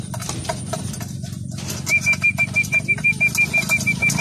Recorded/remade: recorded